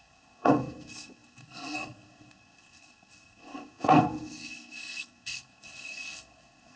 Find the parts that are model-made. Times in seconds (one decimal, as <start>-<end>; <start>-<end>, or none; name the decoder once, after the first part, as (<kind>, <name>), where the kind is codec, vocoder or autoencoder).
0.0-6.8 (codec, SNAC)